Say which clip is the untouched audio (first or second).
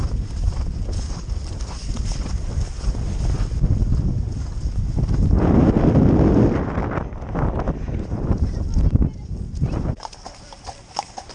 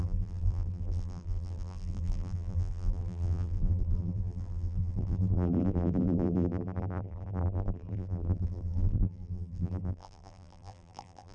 first